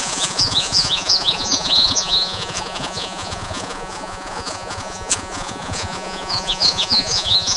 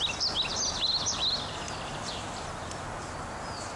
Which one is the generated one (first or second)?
first